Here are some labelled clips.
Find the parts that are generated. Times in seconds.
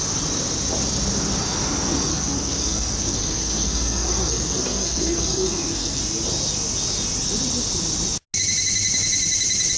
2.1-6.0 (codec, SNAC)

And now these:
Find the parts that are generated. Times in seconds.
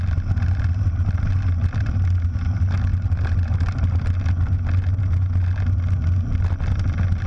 none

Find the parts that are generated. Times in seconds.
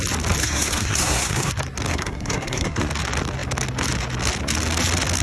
0.4-1.5 (codec, SNAC); 1.9-2.8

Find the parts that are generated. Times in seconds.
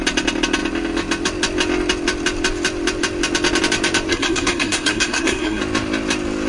4.1-5.6 (codec, SNAC)